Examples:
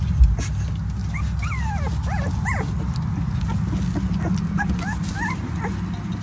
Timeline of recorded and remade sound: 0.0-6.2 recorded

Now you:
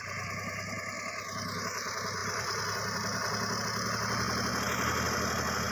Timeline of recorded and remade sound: 0.0-2.2 recorded; 2.2-3.6 remade; 3.6-5.7 recorded

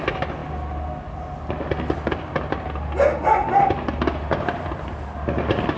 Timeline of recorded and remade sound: 0.0-5.8 recorded

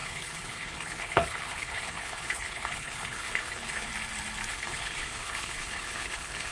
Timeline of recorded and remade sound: 0.0-3.9 remade; 3.9-4.5 recorded; 4.5-6.5 remade

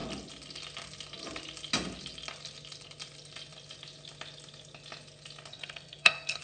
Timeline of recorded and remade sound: 0.0-5.5 recorded; 5.5-6.4 remade

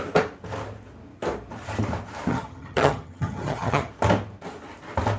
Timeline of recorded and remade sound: 0.0-2.3 recorded; 2.3-3.9 remade; 3.9-5.2 recorded

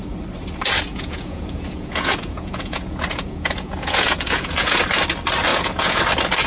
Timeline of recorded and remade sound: 0.0-0.9 recorded; 0.9-4.8 remade; 4.8-5.5 recorded; 5.5-6.0 remade; 6.0-6.5 recorded